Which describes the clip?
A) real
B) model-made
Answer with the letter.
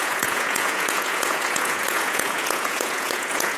B